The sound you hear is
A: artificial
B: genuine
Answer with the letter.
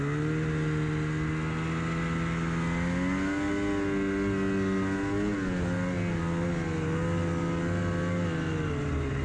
B